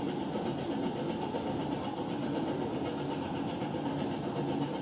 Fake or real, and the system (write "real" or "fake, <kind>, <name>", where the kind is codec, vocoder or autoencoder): real